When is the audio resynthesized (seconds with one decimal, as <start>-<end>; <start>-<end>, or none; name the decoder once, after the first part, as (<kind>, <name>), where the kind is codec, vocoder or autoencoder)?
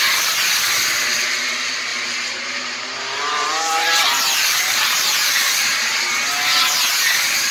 1.9-5.7 (vocoder, BigVGAN v2)